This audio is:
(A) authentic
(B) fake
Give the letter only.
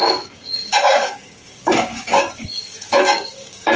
B